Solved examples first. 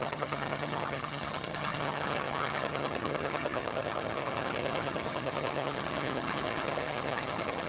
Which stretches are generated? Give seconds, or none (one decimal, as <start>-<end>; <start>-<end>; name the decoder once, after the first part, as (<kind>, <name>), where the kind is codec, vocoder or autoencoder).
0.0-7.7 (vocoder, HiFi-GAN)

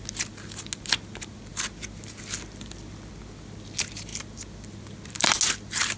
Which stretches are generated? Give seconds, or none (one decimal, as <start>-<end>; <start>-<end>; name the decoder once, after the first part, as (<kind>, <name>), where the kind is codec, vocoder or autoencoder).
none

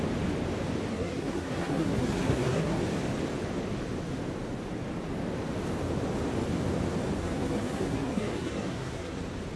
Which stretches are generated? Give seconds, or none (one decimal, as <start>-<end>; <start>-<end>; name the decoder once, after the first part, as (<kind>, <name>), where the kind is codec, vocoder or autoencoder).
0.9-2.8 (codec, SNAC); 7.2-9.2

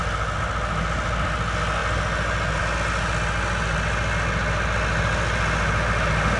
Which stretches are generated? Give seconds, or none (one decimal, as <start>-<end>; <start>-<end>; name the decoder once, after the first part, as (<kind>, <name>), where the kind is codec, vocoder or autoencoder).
none

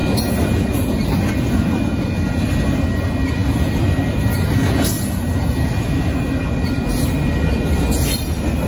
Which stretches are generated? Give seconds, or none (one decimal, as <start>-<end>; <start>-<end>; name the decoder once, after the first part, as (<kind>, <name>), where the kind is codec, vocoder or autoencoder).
none

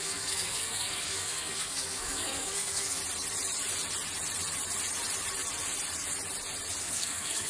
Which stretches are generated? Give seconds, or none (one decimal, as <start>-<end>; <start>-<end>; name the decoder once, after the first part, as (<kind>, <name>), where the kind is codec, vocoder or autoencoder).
0.0-3.0 (codec, SNAC); 6.8-7.5

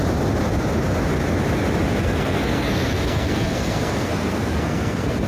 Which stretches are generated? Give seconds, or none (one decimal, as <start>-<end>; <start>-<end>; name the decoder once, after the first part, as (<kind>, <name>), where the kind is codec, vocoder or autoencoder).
2.0-5.3 (codec, SNAC)

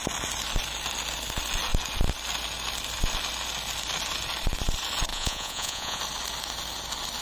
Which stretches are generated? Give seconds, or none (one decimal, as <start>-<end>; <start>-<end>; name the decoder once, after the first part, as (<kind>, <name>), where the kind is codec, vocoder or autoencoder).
5.1-6.0 (vocoder, Vocos)